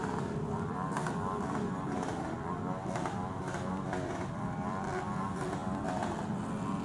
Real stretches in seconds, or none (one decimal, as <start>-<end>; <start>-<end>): none